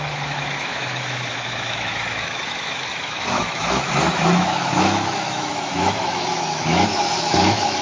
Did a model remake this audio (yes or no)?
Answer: yes